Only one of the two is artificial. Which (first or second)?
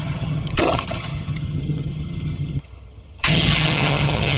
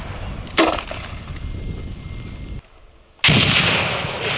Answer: first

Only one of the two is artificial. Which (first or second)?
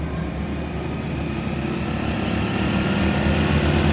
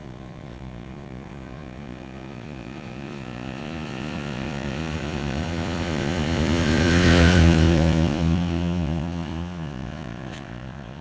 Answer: second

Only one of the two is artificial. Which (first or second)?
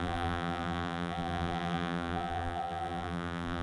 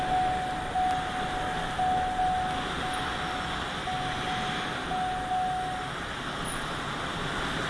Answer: first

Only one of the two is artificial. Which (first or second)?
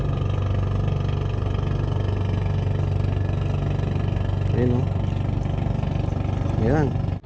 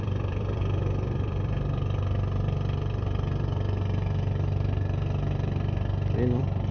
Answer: second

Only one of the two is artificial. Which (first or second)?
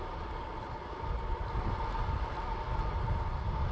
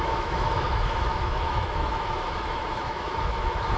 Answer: second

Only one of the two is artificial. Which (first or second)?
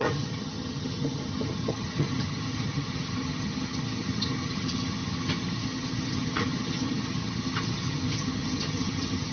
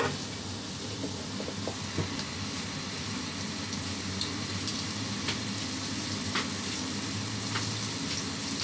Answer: first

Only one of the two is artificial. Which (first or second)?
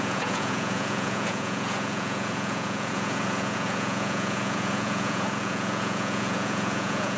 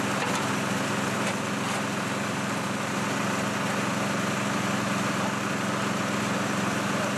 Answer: first